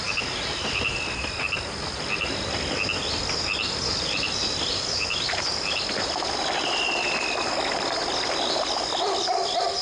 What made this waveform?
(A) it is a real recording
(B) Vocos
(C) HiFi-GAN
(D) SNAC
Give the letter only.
A